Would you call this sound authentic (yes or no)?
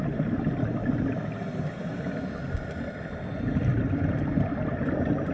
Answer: yes